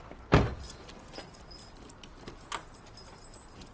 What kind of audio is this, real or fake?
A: real